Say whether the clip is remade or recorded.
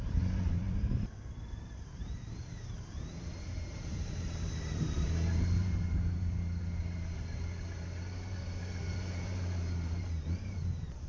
remade